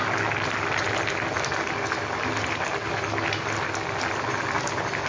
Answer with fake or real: real